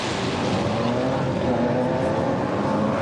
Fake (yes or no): no